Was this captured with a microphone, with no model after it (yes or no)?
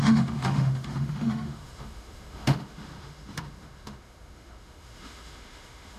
no